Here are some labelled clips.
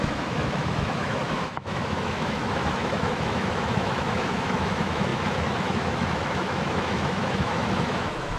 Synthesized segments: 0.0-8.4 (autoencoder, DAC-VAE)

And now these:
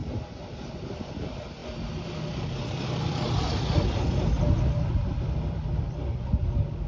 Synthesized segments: none

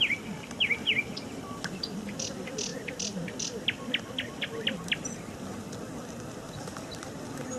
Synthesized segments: none

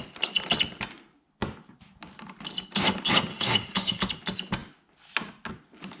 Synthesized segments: 3.3-4.0 (autoencoder, DAC-VAE)

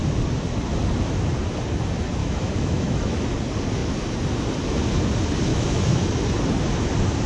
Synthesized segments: 2.2-3.2 (autoencoder, DAC-VAE); 5.5-6.0

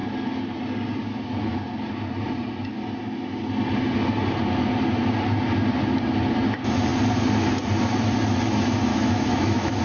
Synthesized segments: 8.9-9.8 (autoencoder, DAC-VAE)

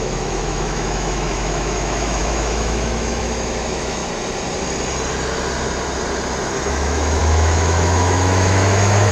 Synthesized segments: 0.0-4.0 (autoencoder, DAC-VAE); 6.7-9.1

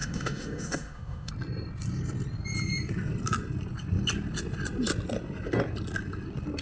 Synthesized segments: 0.0-1.3 (autoencoder, DAC-VAE)